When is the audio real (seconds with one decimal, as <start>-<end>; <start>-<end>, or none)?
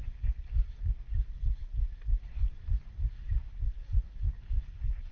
0.0-5.1